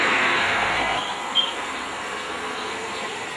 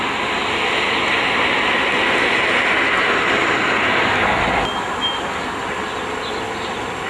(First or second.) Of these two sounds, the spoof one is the first